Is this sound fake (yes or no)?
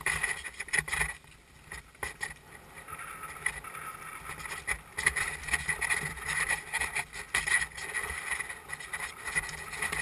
no